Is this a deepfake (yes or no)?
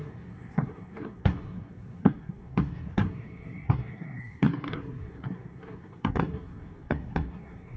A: yes